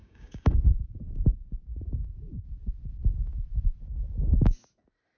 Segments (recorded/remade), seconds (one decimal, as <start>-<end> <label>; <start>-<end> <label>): 0.0-0.6 remade; 0.6-5.2 recorded